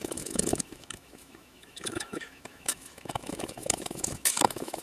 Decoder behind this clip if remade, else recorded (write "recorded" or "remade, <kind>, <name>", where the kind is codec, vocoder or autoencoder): remade, autoencoder, DAC-VAE